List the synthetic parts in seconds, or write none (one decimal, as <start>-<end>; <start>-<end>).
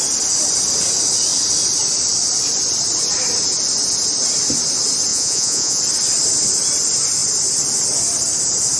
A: 5.1-5.8